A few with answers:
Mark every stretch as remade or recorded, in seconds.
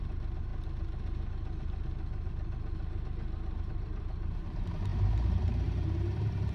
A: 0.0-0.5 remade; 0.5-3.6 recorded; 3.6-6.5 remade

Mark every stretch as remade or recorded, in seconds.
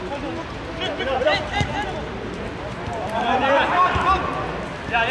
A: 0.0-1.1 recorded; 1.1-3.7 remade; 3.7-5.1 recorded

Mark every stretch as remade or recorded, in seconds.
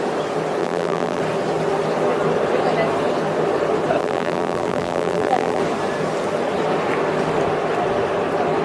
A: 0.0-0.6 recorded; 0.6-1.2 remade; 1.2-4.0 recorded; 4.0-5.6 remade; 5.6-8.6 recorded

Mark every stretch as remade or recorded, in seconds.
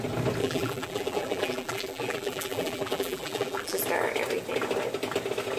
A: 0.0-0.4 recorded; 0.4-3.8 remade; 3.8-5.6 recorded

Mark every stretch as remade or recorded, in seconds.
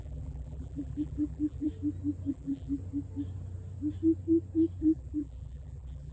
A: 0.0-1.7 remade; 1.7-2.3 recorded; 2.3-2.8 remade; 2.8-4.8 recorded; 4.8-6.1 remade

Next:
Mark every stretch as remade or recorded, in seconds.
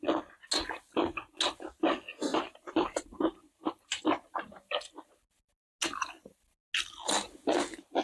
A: 0.0-2.3 recorded; 2.3-4.7 remade; 4.7-8.0 recorded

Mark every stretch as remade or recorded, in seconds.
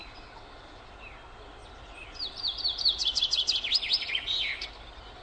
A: 0.0-1.6 recorded; 1.6-4.7 remade; 4.7-5.2 recorded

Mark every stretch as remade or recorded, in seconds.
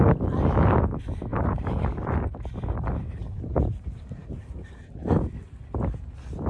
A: 0.0-1.3 recorded; 1.3-2.1 remade; 2.1-3.2 recorded; 3.2-3.8 remade; 3.8-4.2 recorded; 4.2-4.9 remade; 4.9-6.5 recorded